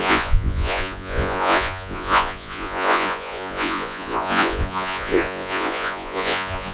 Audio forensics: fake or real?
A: fake